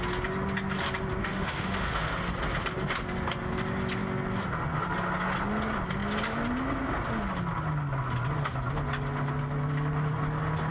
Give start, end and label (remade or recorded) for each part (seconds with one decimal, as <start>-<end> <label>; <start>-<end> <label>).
0.0-1.2 recorded; 1.2-2.1 remade; 2.1-10.7 recorded